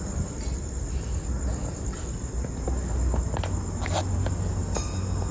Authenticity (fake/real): real